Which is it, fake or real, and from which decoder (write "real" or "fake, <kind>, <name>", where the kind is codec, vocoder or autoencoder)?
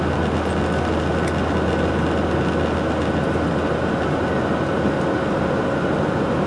real